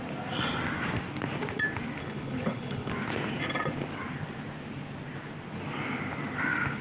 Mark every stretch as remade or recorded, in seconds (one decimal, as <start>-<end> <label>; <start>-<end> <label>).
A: 0.0-2.0 recorded; 2.0-2.9 remade; 2.9-6.8 recorded